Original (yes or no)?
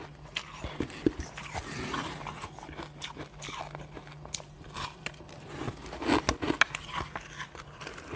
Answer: yes